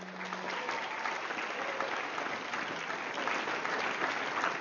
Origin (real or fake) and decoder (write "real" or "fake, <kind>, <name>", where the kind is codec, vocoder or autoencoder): real